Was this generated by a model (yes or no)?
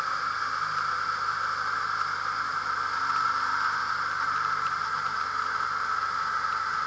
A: no